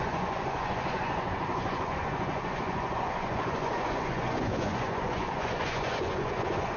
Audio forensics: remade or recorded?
remade